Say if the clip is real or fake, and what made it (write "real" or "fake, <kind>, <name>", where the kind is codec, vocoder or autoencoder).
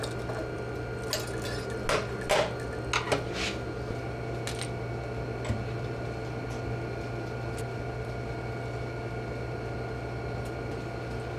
real